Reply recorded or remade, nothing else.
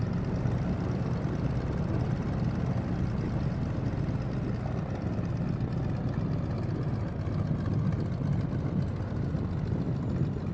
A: recorded